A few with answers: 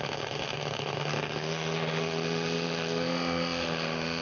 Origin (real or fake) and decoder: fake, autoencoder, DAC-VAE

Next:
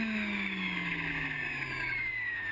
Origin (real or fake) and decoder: fake, codec, DAC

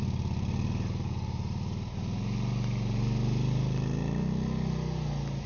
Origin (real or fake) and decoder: real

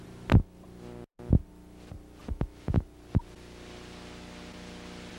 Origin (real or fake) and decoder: real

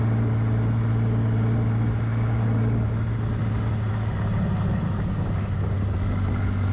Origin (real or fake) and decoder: real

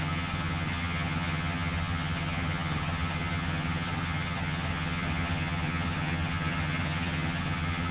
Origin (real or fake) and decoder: fake, vocoder, HiFi-GAN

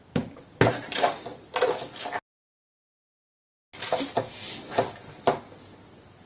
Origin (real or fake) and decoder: real